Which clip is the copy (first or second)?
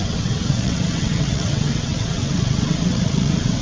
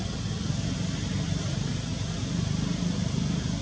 first